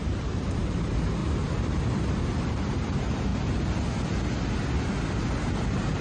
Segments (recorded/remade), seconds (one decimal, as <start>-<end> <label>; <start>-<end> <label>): 0.0-3.3 remade; 3.3-5.2 recorded; 5.2-6.0 remade